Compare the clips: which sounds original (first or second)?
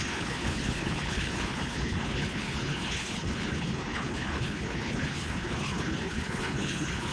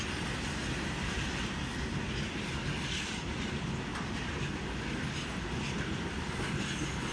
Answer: second